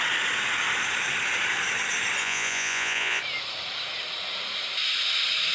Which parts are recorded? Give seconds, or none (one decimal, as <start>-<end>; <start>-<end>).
0.0-2.2; 3.2-5.5